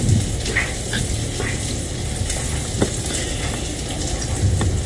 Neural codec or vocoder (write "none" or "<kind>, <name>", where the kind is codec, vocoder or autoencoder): none